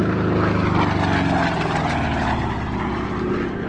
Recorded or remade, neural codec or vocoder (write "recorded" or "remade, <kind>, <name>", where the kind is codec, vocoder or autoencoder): recorded